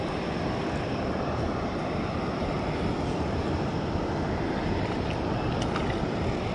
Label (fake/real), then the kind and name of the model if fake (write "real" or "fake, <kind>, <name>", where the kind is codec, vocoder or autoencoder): real